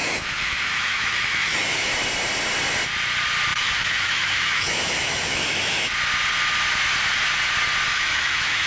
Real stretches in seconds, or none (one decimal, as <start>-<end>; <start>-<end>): 1.9-3.5; 5.9-7.9

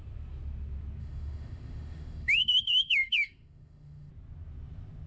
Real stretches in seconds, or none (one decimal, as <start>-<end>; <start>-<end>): 0.0-1.0; 4.1-5.1

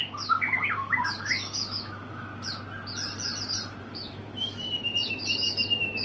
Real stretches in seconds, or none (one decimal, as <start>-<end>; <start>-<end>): 2.3-3.8

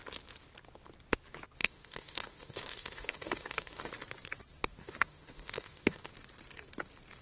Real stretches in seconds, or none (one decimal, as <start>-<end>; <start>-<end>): 0.0-1.6; 3.9-4.8; 6.1-7.2